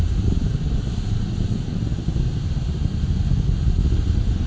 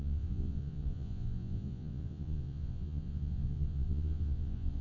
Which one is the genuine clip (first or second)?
first